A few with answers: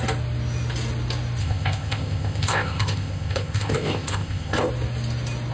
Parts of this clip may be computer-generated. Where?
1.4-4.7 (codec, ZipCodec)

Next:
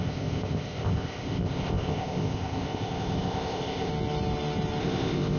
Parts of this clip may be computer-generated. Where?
0.0-3.9 (codec, ZipCodec); 4.8-5.4

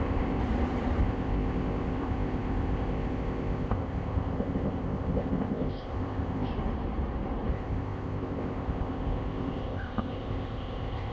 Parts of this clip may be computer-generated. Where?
0.0-0.4 (codec, ZipCodec); 1.0-6.5; 7.5-11.1

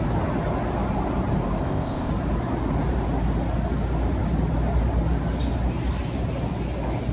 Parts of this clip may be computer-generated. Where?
1.6-2.1 (codec, ZipCodec)

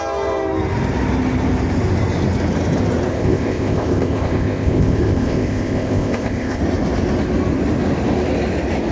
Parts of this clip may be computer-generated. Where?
3.1-6.6 (codec, ZipCodec)

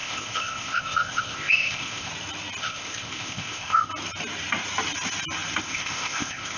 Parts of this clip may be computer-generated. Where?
0.0-2.1 (codec, ZipCodec); 2.6-3.9; 5.6-6.6

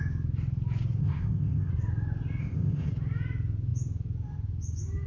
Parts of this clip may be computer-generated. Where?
1.0-1.7 (codec, ZipCodec); 2.4-2.9